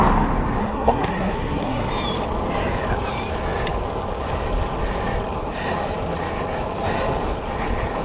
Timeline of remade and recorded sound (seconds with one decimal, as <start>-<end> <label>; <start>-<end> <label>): 0.0-0.6 recorded; 0.6-1.9 remade; 1.9-8.0 recorded